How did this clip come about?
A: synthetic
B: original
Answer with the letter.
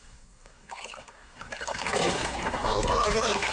A